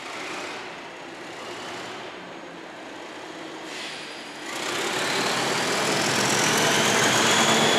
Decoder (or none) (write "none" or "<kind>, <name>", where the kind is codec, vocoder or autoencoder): none